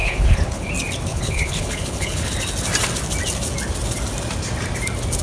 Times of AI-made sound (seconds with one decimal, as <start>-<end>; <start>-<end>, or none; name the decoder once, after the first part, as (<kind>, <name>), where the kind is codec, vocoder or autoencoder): 0.0-0.7 (codec, HILCodec); 1.1-2.3